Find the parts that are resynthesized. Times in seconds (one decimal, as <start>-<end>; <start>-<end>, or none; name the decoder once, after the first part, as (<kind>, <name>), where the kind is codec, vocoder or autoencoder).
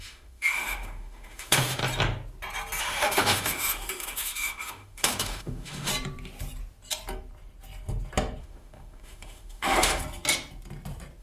0.0-1.8 (autoencoder, DAC-VAE); 2.8-5.9; 8.4-10.0